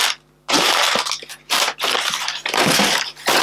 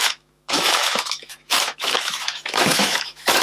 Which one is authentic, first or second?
first